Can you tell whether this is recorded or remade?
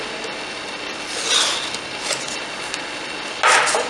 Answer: recorded